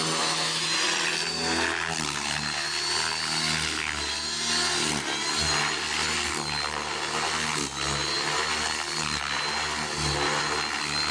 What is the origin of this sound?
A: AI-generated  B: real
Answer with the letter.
B